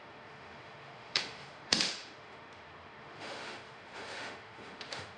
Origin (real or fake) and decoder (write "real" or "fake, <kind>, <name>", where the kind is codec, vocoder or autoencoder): fake, autoencoder, DAC-VAE